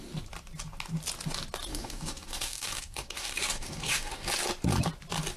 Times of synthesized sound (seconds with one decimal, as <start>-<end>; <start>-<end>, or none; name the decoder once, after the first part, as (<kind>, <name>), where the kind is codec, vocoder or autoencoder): 1.7-4.3 (codec, DAC)